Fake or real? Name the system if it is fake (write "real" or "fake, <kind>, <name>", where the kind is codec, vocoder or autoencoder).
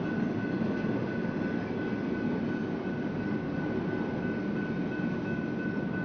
real